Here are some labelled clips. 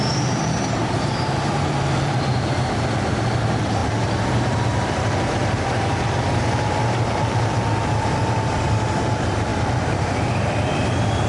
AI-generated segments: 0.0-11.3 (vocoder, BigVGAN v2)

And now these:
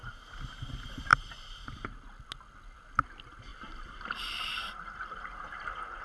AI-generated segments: 3.5-4.4 (vocoder, BigVGAN v2)

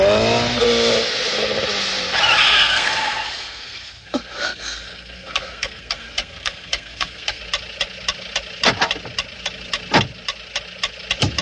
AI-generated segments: 2.4-7.4 (codec, SNAC)

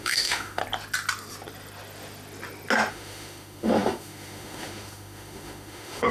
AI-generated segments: 0.0-0.6 (autoencoder, DAC-VAE); 2.9-6.1